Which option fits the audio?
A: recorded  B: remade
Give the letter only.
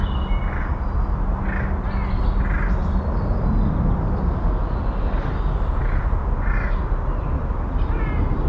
A